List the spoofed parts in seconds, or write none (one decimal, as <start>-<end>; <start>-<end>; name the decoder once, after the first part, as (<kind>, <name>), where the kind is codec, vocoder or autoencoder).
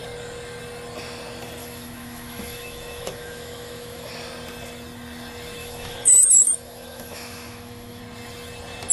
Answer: 1.6-4.1 (autoencoder, DAC-VAE); 5.6-8.0